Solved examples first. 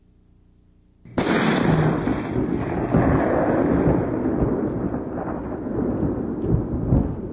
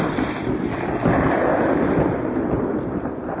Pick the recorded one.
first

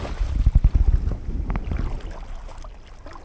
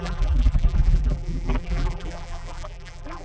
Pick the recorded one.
first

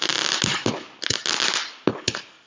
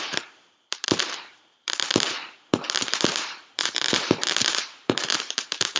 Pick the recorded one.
first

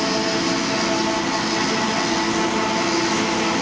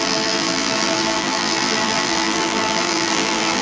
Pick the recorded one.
first